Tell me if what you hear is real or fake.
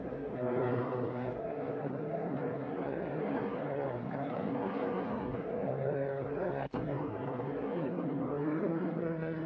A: fake